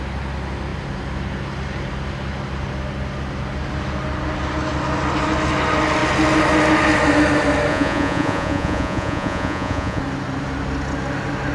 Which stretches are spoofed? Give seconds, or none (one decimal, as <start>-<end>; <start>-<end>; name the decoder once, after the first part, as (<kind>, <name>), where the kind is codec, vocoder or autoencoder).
7.7-10.0 (vocoder, Vocos)